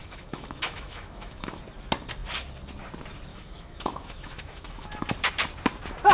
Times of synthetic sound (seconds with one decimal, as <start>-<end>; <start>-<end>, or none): 0.0-1.6; 3.3-5.0